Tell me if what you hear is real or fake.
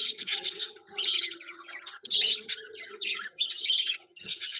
fake